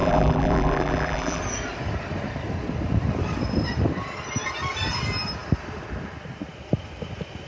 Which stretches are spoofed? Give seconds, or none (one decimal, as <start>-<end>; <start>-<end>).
0.0-1.4

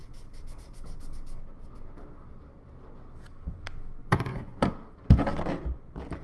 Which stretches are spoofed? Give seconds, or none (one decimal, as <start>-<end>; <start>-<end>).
4.0-4.7

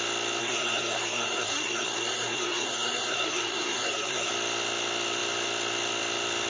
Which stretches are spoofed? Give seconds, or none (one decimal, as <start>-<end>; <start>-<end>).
0.4-4.3

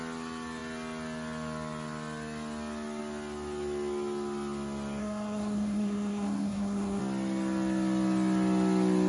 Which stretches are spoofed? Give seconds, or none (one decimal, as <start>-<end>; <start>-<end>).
5.0-7.0

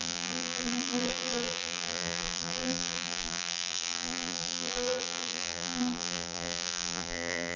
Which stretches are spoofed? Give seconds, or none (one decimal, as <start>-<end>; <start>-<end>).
0.0-7.6

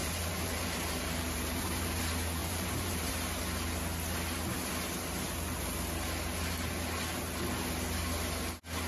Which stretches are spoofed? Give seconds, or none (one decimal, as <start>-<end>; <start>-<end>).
0.0-2.0; 2.4-3.1